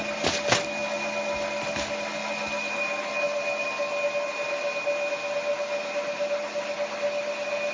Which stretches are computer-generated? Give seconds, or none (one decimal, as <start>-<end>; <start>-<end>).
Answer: none